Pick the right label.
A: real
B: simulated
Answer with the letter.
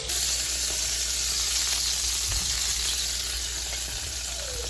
A